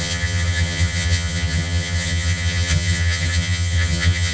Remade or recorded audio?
remade